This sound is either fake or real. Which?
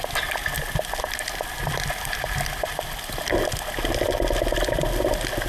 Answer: real